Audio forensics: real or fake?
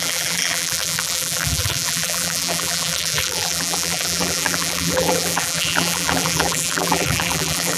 fake